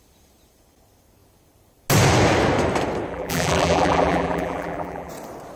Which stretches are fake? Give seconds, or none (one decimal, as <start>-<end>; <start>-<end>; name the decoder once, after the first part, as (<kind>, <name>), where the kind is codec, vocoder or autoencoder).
3.1-5.1 (vocoder, BigVGAN v2)